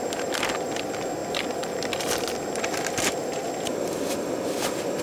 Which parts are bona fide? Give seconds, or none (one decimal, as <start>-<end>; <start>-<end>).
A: 0.0-5.0